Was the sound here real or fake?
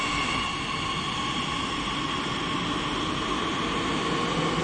real